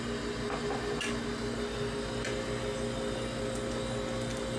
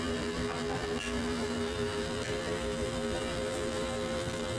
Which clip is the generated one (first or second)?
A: second